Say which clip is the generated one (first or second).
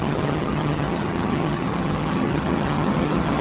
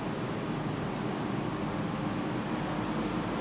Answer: first